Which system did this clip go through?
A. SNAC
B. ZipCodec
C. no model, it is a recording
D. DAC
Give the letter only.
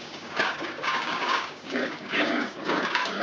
D